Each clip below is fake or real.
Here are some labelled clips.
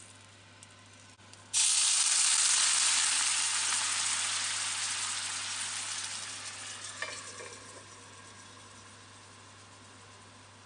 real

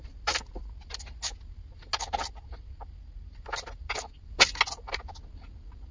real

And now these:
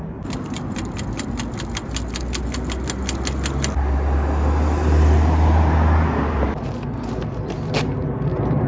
real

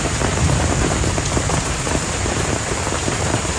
fake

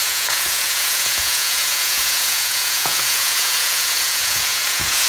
fake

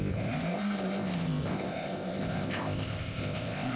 fake